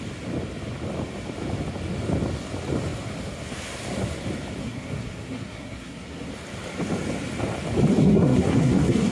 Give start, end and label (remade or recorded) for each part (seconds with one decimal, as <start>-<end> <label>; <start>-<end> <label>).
0.0-4.6 recorded; 4.6-6.3 remade; 6.3-7.9 recorded; 7.9-9.1 remade